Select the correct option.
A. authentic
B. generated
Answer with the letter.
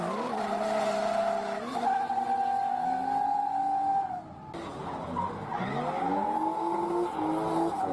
A